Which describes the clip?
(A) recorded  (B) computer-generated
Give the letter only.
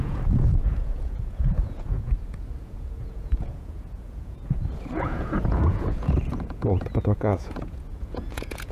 B